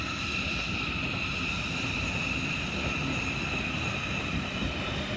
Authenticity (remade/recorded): recorded